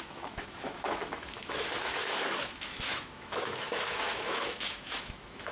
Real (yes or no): no